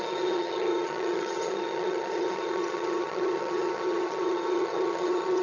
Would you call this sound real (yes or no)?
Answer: no